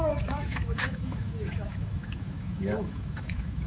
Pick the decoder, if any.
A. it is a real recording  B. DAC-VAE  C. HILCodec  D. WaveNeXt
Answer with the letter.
B